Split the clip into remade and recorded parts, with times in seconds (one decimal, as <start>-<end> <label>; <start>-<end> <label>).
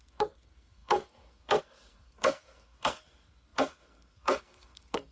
0.0-5.1 remade